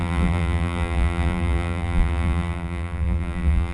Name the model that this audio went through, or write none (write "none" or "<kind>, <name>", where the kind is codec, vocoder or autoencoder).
vocoder, BigVGAN v2